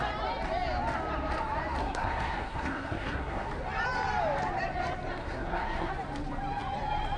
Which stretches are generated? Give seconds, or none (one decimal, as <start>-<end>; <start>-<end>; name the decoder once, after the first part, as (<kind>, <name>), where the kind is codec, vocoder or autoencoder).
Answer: 1.8-3.5 (codec, SNAC); 5.2-5.9